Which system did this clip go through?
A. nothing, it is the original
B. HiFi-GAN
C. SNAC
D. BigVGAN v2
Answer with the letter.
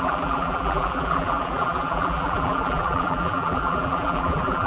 D